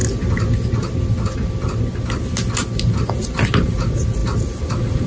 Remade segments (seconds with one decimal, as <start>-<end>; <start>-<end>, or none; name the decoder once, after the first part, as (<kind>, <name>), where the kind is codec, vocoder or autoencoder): none